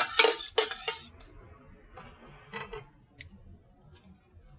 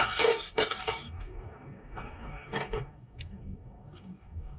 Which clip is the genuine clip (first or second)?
first